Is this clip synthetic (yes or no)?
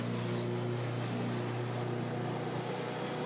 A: no